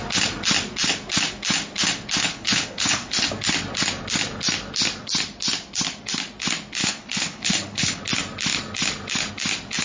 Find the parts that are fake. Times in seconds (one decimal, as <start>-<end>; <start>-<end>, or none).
2.2-3.3; 6.8-8.0